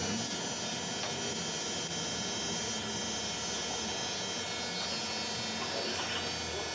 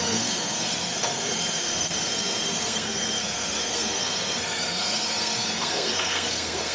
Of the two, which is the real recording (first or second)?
first